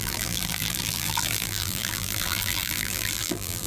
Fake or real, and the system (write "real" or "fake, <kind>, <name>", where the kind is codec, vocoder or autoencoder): fake, vocoder, BigVGAN v2